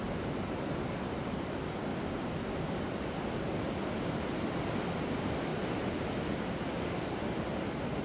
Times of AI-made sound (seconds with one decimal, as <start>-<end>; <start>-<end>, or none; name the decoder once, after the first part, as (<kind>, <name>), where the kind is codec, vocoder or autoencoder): none